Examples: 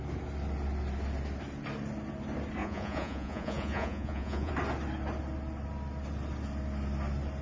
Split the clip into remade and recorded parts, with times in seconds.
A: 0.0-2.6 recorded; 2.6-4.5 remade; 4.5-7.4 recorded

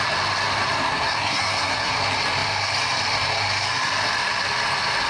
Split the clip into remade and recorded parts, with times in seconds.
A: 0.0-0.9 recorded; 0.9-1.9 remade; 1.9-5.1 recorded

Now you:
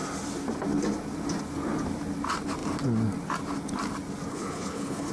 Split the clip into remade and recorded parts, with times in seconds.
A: 0.0-4.3 recorded; 4.3-5.1 remade

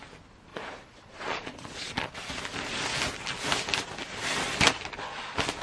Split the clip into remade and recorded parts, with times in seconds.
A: 0.0-0.5 recorded; 0.5-2.1 remade; 2.1-5.6 recorded